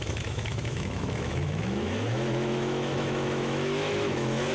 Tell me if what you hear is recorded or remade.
remade